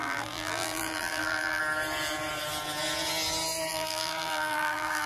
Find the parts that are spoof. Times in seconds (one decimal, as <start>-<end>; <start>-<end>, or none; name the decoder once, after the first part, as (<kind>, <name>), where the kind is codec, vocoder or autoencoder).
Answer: 0.0-1.6 (vocoder, BigVGAN v2); 3.7-5.1